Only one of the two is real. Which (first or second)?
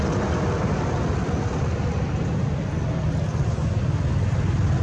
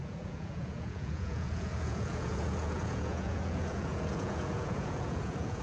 first